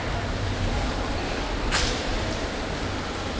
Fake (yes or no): no